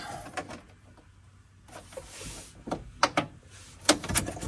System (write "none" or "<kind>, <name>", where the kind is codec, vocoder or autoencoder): none